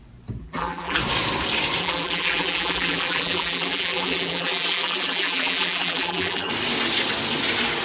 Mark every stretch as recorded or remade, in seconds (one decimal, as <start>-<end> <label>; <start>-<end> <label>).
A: 0.0-0.4 recorded; 0.4-1.0 remade; 1.0-1.8 recorded; 1.8-6.5 remade; 6.5-7.8 recorded